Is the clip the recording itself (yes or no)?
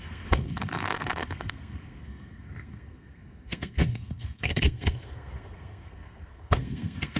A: no